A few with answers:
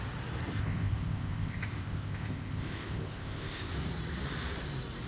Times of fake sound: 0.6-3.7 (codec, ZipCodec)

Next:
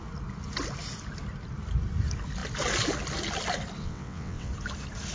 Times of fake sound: 3.8-4.5 (vocoder, WaveNeXt)

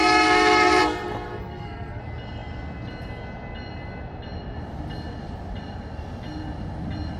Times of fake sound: 0.0-0.8 (codec, SNAC); 1.4-2.0

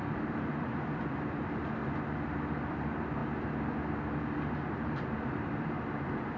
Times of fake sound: 0.0-1.8 (vocoder, BigVGAN v2); 2.7-3.2; 4.7-6.4